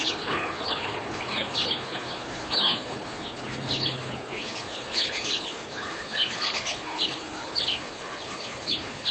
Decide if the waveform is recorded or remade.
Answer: remade